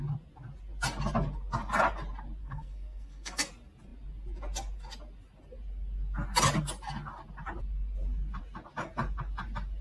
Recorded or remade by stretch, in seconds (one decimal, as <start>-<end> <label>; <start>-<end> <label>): 0.0-2.4 recorded; 2.4-3.5 remade; 3.5-9.8 recorded